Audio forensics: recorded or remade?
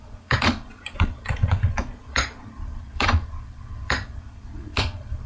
remade